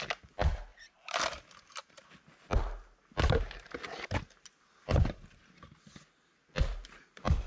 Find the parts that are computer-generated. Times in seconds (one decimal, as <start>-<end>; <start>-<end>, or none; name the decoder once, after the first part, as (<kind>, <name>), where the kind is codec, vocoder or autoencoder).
none